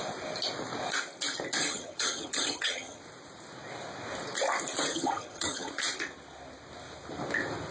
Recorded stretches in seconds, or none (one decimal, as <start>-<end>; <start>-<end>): 0.0-1.6; 3.0-4.9; 5.7-7.7